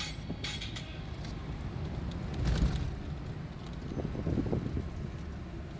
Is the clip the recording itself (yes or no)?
yes